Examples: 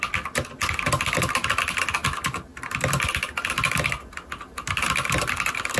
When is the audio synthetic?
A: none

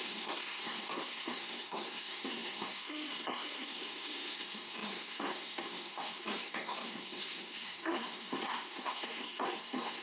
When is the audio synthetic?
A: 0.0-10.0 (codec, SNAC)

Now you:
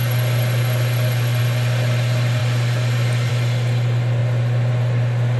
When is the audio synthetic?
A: none

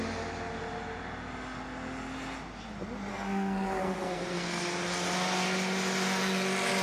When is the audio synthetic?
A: 3.1-4.6 (codec, SNAC)